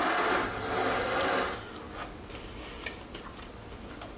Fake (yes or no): no